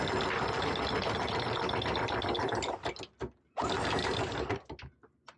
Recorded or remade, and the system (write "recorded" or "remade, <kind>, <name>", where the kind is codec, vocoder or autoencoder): recorded